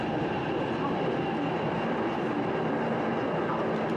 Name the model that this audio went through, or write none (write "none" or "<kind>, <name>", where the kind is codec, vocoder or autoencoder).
none